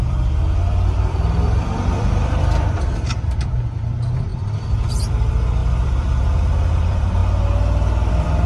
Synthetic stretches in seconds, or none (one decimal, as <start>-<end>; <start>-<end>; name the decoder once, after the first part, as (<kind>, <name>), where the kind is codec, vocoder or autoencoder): 0.0-7.2 (vocoder, BigVGAN v2); 8.1-8.5